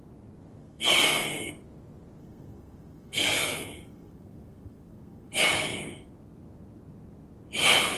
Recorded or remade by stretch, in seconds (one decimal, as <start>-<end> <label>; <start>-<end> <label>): 0.0-0.6 recorded; 0.6-1.5 remade; 1.5-2.2 recorded; 2.2-5.5 remade; 5.5-8.0 recorded